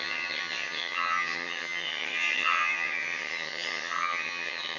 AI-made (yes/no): yes